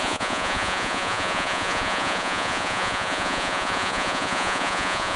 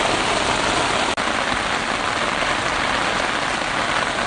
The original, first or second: second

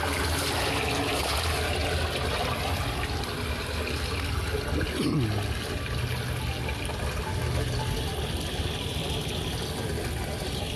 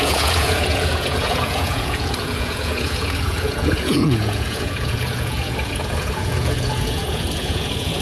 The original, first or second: first